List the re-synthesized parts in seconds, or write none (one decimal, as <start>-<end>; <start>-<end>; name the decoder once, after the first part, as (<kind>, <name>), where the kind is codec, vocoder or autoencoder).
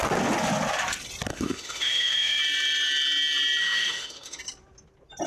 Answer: 1.3-2.4 (autoencoder, DAC-VAE); 3.6-4.4